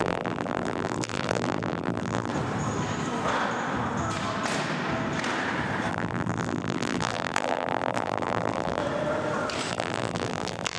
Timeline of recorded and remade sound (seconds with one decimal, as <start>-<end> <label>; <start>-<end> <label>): 0.0-2.3 remade; 2.3-5.9 recorded; 5.9-8.8 remade; 8.8-9.7 recorded; 9.7-10.8 remade